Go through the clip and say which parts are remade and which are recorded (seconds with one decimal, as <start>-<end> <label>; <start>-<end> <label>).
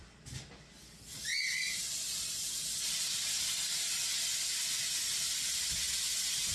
0.0-6.5 recorded